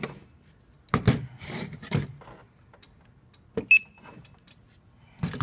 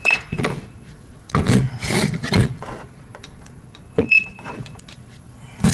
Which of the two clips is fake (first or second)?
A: second